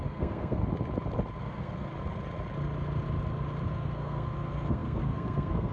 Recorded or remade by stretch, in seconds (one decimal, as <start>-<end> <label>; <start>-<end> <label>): 0.0-0.6 remade; 0.6-1.4 recorded; 1.4-1.9 remade; 1.9-3.7 recorded; 3.7-5.7 remade